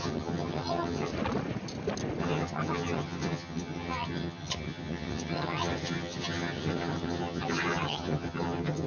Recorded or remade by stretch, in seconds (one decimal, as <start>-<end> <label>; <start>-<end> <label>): 0.0-1.1 remade; 1.1-2.2 recorded; 2.2-8.9 remade